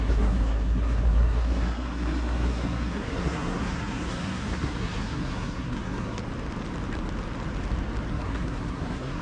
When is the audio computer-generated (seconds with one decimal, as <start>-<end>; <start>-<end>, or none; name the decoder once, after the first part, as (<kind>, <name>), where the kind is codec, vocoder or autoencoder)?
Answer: 0.0-6.2 (codec, SNAC); 8.1-9.2